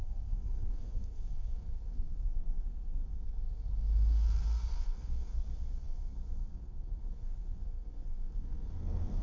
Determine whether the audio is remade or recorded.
remade